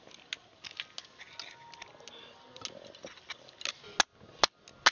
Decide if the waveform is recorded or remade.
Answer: recorded